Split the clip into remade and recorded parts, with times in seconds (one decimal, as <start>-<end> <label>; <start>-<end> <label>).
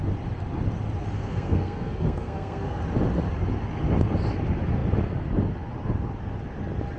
0.0-1.2 recorded; 1.2-2.8 remade; 2.8-7.0 recorded